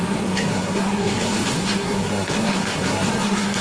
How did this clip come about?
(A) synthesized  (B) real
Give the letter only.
A